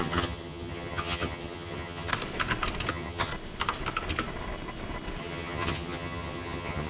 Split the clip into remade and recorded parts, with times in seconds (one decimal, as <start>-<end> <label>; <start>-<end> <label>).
0.0-2.1 remade; 2.1-2.9 recorded; 2.9-3.3 remade; 3.3-5.2 recorded; 5.2-6.9 remade